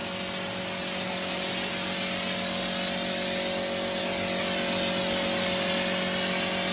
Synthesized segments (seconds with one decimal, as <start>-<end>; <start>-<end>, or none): none